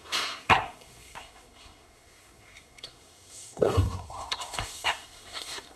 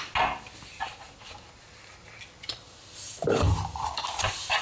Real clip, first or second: second